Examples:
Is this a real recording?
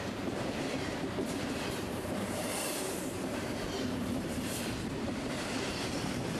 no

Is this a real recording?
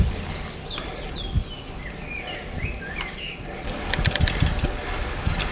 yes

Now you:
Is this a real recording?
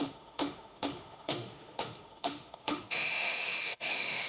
no